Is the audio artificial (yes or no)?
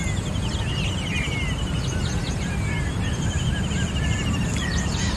no